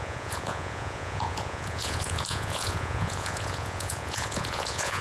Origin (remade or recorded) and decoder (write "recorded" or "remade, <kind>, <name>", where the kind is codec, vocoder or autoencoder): remade, vocoder, Vocos